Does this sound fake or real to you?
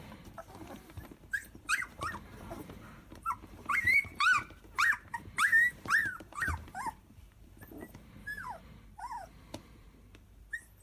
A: fake